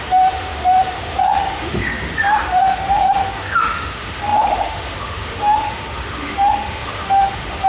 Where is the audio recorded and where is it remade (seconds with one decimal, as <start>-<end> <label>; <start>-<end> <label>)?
0.0-7.7 remade